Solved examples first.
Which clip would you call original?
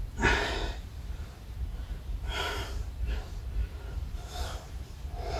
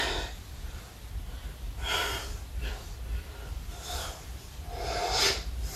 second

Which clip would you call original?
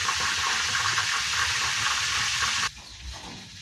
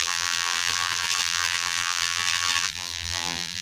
first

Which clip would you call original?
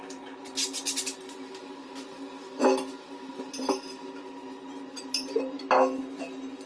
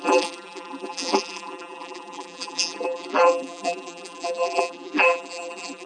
first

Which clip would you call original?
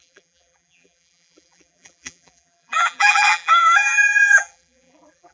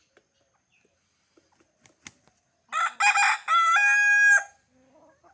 second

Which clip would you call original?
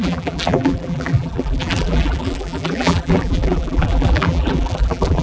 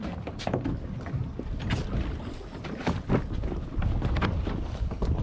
second